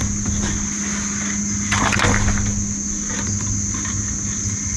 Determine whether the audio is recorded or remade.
recorded